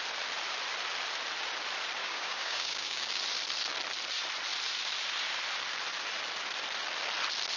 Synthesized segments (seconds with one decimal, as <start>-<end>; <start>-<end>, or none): 2.0-3.2